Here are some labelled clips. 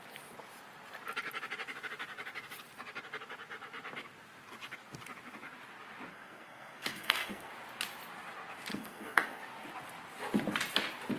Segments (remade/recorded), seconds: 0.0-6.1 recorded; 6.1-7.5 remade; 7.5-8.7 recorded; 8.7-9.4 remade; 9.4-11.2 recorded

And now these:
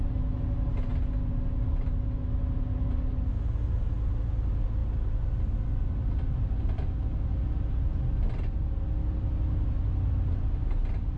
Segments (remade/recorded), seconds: 0.0-11.2 recorded

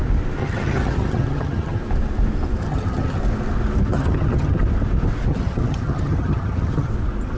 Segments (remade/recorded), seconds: 0.0-0.4 recorded; 0.4-1.8 remade; 1.8-2.6 recorded; 2.6-3.2 remade; 3.2-3.9 recorded; 3.9-4.6 remade; 4.6-5.3 recorded; 5.3-6.9 remade; 6.9-7.4 recorded

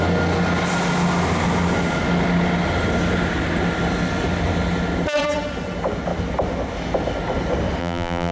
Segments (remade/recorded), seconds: 0.0-7.8 recorded; 7.8-8.3 remade

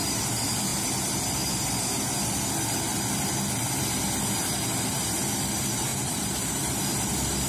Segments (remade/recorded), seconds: 0.0-5.9 recorded; 5.9-6.8 remade; 6.8-7.5 recorded

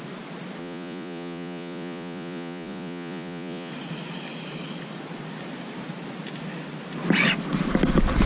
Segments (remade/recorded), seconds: 0.0-0.6 recorded; 0.6-3.7 remade; 3.7-8.3 recorded

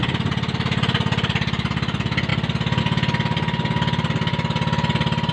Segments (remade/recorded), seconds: 0.0-5.3 recorded

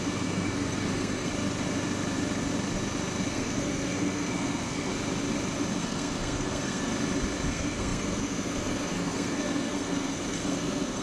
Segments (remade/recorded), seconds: 0.0-1.3 remade; 1.3-3.3 recorded; 3.3-4.9 remade; 4.9-5.8 recorded; 5.8-6.9 remade; 6.9-7.5 recorded; 7.5-11.0 remade